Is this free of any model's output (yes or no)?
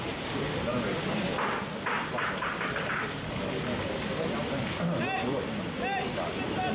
yes